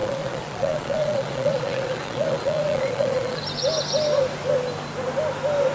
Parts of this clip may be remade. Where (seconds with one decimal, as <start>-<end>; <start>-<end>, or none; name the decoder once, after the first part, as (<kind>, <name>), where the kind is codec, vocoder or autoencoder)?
0.0-3.4 (vocoder, Vocos)